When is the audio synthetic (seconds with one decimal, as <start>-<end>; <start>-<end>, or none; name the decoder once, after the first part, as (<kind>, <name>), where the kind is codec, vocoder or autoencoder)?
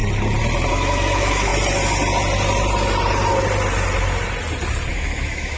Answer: 0.7-1.5 (autoencoder, DAC-VAE); 4.9-5.6